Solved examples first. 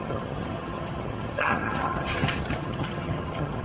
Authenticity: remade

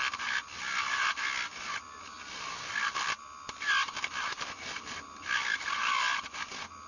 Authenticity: recorded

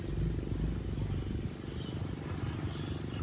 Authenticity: recorded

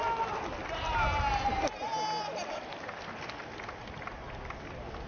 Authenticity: recorded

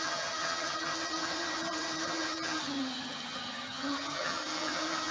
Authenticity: remade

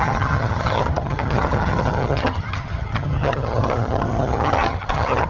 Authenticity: remade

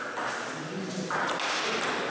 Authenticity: recorded